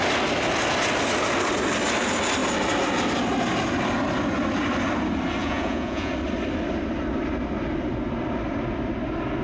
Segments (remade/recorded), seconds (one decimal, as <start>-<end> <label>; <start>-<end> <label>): 0.0-5.4 recorded; 5.4-6.1 remade; 6.1-9.4 recorded